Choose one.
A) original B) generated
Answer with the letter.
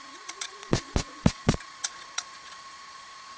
B